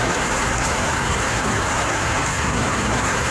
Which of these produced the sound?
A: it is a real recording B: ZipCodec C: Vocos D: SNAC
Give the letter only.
D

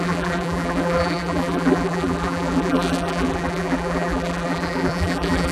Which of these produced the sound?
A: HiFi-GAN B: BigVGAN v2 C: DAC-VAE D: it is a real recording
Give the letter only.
B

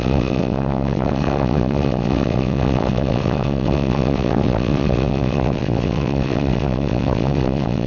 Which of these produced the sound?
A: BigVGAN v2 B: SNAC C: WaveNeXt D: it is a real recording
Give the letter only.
C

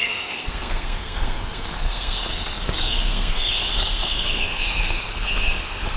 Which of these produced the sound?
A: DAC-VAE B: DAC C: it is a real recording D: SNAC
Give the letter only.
D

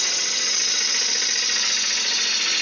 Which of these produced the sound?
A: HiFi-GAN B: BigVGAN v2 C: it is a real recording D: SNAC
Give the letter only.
C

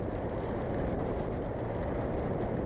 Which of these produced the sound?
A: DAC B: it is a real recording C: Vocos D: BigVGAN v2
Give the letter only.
D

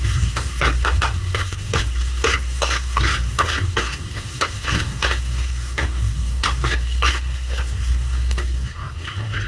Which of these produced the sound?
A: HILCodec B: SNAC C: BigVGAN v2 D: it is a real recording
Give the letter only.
B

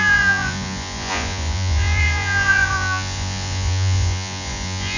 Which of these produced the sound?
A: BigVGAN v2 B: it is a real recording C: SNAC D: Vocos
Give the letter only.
D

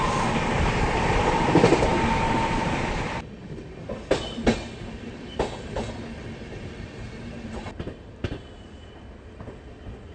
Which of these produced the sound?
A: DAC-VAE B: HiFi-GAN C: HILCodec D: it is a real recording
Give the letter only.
D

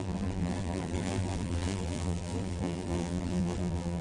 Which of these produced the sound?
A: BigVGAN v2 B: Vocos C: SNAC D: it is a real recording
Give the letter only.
A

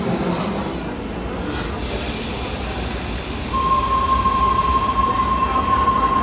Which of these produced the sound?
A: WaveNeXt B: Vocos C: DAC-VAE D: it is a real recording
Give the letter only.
D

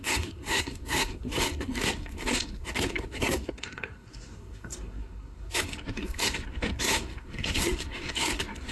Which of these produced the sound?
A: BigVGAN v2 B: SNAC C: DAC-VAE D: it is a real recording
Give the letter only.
B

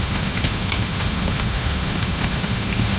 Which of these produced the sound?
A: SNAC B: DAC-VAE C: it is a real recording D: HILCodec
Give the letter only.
B